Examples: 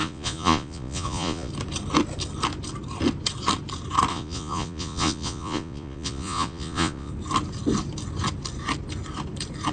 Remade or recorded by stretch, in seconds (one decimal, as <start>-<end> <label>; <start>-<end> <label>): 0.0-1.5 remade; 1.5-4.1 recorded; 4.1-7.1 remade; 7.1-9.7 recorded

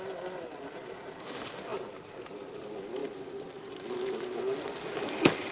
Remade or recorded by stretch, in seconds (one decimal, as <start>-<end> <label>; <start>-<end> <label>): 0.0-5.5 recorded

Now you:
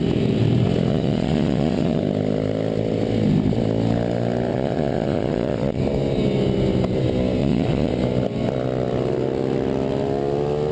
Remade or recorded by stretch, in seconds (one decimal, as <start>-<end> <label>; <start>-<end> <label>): 0.0-0.9 recorded; 0.9-2.0 remade; 2.0-4.5 recorded; 4.5-5.8 remade; 5.8-7.4 recorded; 7.4-7.9 remade; 7.9-10.7 recorded

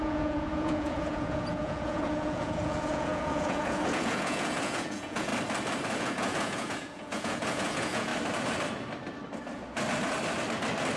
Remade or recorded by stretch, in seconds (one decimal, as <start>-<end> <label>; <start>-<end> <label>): 0.0-5.3 remade; 5.3-6.0 recorded; 6.0-8.1 remade; 8.1-11.0 recorded

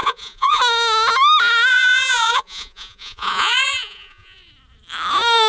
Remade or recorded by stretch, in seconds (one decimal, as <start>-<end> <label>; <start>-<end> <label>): 0.0-0.6 remade; 0.6-1.7 recorded; 1.7-4.5 remade; 4.5-5.5 recorded

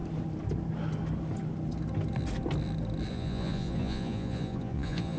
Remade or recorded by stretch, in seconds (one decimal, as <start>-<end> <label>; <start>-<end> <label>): 0.0-3.1 recorded; 3.1-5.2 remade

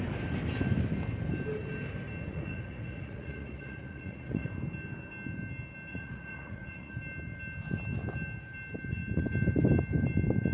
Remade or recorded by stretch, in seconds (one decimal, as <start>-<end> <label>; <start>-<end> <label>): 0.0-2.3 recorded; 2.3-4.5 remade; 4.5-5.9 recorded; 5.9-6.9 remade; 6.9-10.5 recorded

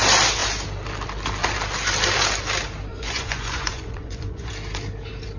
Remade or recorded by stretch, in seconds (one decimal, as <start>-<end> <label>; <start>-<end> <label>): 0.0-2.9 recorded; 2.9-4.5 remade; 4.5-5.4 recorded